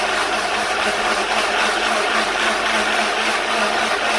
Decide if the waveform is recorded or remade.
recorded